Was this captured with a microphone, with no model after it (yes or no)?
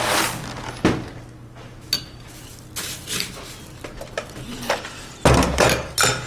yes